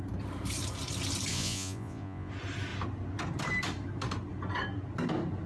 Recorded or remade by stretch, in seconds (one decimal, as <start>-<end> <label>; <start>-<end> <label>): 0.0-1.3 recorded; 1.3-2.3 remade; 2.3-5.5 recorded